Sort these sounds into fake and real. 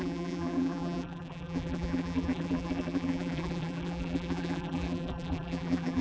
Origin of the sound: fake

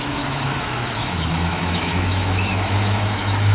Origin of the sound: fake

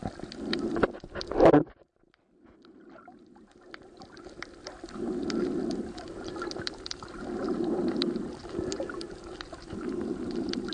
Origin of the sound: real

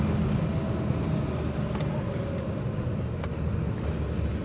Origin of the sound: real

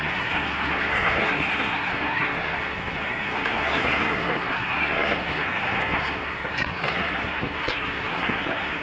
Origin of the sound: fake